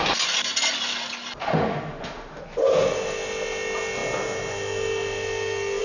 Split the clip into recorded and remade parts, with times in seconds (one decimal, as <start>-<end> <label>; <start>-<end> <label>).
0.0-1.4 recorded; 1.4-2.4 remade; 2.4-5.8 recorded